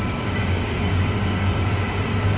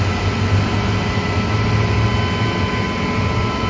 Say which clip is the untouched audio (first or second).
second